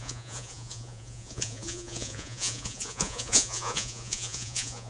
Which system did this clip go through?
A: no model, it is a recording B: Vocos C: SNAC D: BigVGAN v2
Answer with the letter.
B